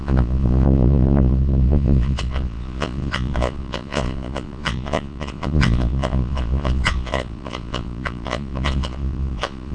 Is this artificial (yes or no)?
yes